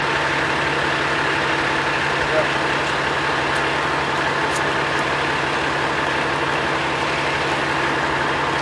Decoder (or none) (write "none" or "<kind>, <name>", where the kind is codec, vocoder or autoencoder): none